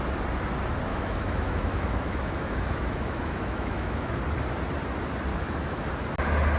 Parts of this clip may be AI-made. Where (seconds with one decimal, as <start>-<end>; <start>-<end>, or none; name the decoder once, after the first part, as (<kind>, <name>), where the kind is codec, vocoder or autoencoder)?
0.9-4.2 (autoencoder, DAC-VAE); 5.3-5.9